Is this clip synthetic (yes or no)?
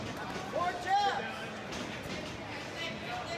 no